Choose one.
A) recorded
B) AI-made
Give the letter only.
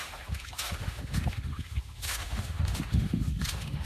B